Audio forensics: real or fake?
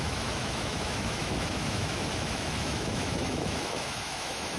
fake